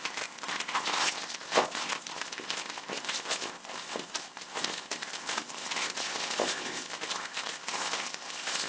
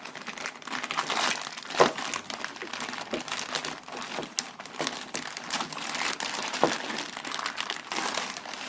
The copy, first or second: first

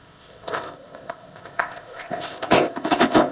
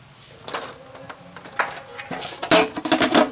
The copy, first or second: first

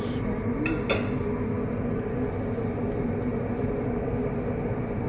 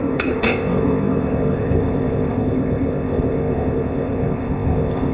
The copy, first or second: second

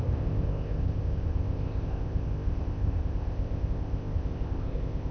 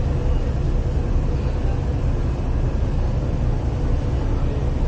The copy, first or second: first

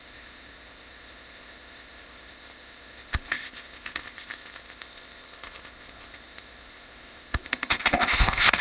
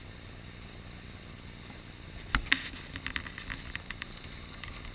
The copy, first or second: first